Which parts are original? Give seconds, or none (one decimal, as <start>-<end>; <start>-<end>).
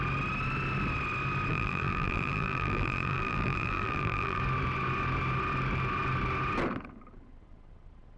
0.0-1.5; 4.4-8.2